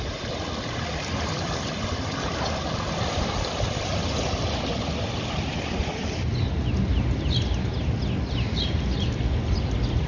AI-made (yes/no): no